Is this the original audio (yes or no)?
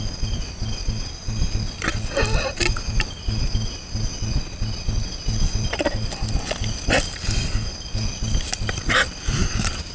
yes